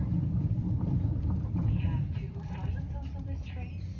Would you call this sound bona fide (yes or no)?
no